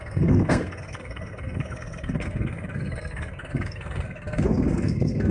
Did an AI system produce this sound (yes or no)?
yes